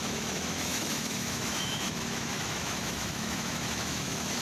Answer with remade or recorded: remade